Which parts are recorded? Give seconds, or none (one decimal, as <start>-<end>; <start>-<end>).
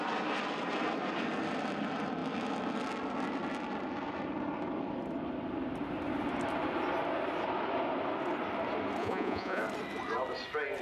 0.0-9.0; 9.6-10.8